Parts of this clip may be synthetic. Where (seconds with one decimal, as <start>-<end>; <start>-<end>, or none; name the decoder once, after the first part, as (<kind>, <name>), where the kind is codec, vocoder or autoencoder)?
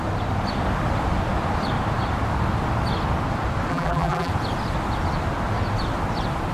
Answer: 3.7-4.3 (vocoder, BigVGAN v2)